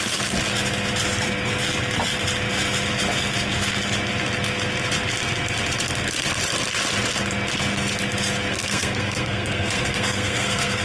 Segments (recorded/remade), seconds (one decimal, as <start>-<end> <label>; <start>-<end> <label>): 0.0-8.5 recorded; 8.5-10.8 remade